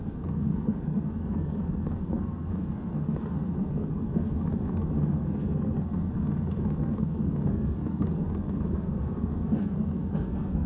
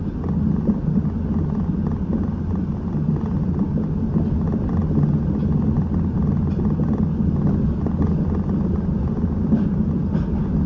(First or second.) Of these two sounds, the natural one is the second